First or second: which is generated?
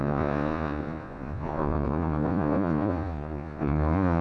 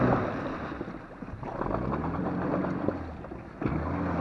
first